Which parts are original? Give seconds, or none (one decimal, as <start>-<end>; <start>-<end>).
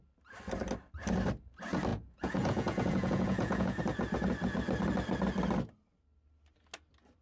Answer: 0.0-1.9; 3.8-7.2